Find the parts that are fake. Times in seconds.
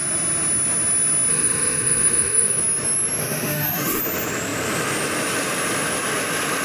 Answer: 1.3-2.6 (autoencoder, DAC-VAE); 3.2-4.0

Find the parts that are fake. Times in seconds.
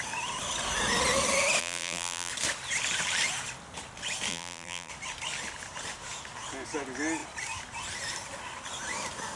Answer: 1.6-2.3 (vocoder, BigVGAN v2); 4.3-4.9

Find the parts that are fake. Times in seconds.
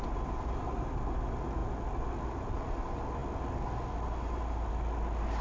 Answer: none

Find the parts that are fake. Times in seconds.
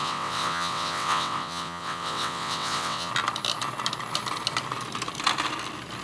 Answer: 0.0-3.1 (vocoder, WaveNeXt)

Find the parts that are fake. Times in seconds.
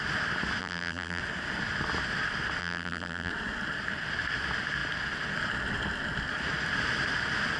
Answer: 0.6-1.2 (vocoder, BigVGAN v2); 2.6-3.3